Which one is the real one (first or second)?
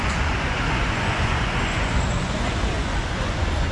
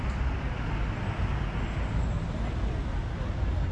second